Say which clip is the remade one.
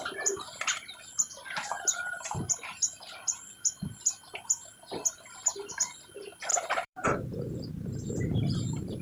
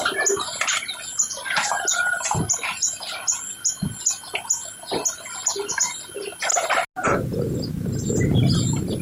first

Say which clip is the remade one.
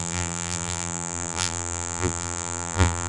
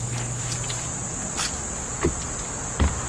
first